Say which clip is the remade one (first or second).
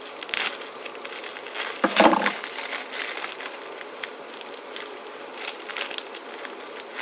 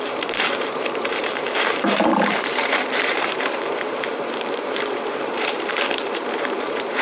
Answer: second